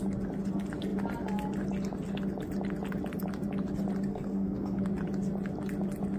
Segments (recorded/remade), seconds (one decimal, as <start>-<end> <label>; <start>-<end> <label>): 0.0-4.1 recorded; 4.1-4.8 remade; 4.8-6.2 recorded